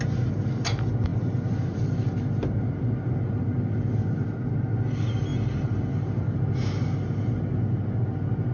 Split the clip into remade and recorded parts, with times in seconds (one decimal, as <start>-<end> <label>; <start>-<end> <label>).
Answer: 0.0-1.1 recorded; 1.1-4.3 remade; 4.3-5.3 recorded; 5.3-6.6 remade; 6.6-8.5 recorded